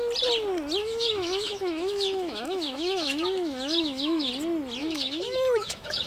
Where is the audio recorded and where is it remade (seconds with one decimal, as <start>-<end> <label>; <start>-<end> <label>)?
0.0-0.8 recorded; 0.8-4.3 remade; 4.3-4.8 recorded; 4.8-6.1 remade